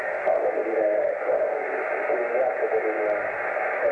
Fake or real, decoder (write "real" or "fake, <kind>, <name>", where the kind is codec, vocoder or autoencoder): real